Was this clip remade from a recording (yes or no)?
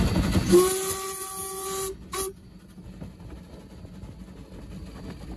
no